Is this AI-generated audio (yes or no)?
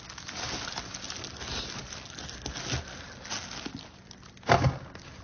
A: no